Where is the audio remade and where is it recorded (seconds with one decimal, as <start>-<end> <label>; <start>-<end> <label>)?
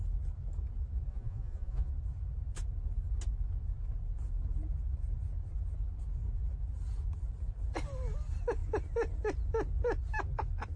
0.0-1.1 recorded; 1.1-1.9 remade; 1.9-10.8 recorded